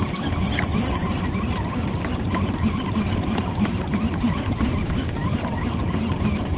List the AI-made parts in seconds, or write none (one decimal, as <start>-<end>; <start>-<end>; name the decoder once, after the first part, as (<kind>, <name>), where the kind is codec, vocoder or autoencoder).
0.7-4.7 (vocoder, BigVGAN v2)